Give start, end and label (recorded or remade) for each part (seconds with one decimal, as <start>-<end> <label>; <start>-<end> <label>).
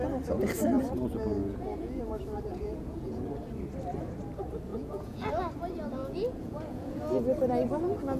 0.0-1.4 recorded; 1.4-2.0 remade; 2.0-2.5 recorded; 2.5-3.2 remade; 3.2-4.7 recorded; 4.7-5.3 remade; 5.3-6.0 recorded; 6.0-7.0 remade; 7.0-8.2 recorded